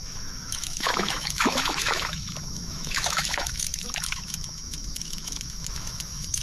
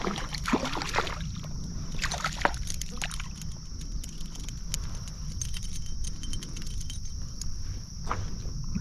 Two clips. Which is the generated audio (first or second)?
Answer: first